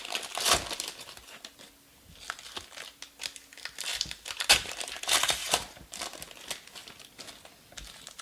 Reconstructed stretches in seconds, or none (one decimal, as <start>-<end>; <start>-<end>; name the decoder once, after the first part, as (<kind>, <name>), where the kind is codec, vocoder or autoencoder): 3.9-5.0 (vocoder, BigVGAN v2); 5.4-6.0